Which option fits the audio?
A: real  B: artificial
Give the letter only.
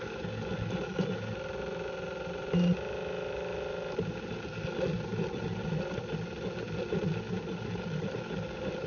A